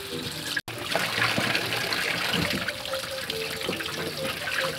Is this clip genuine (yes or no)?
yes